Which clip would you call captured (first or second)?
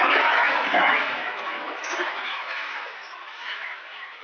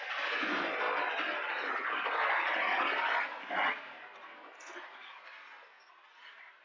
second